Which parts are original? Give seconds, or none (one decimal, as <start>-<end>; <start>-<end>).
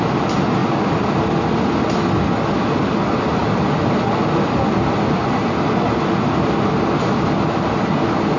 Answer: 0.0-8.4